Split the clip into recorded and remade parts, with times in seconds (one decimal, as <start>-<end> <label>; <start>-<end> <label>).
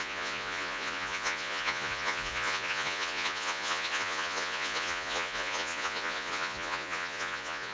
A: 0.0-7.7 remade